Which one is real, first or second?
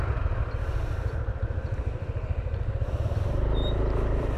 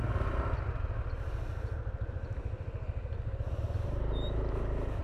second